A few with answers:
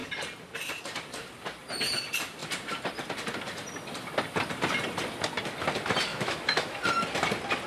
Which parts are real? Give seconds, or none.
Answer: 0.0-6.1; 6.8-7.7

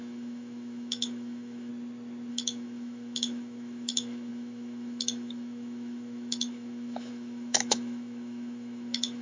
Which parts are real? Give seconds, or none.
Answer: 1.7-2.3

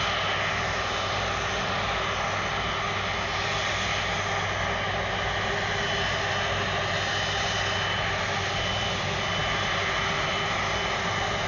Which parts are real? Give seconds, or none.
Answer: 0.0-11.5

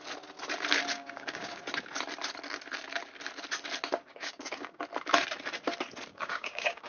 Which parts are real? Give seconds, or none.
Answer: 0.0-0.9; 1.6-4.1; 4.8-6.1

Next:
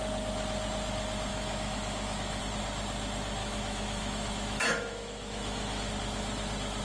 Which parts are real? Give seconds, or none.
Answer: 0.0-1.3; 2.4-3.4; 5.9-6.8